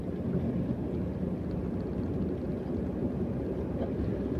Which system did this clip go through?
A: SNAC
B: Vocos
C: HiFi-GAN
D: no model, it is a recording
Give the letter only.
D